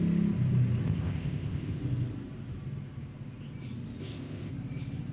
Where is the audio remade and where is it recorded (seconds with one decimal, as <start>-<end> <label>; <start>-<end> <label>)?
0.0-0.9 recorded; 0.9-1.8 remade; 1.8-4.0 recorded; 4.0-4.5 remade; 4.5-5.1 recorded